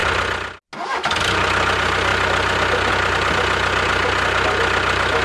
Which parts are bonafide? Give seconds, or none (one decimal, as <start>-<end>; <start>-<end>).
0.0-5.2